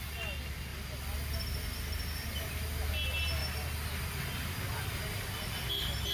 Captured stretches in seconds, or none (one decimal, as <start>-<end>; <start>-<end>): 0.0-6.1